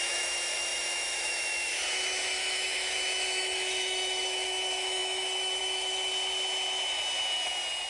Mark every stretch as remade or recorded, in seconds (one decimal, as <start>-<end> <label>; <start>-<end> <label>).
0.0-6.1 remade; 6.1-7.9 recorded